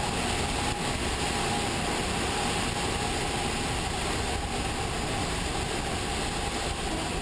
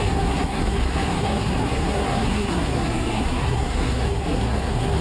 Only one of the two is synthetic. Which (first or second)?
second